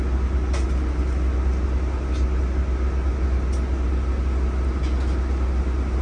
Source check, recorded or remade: recorded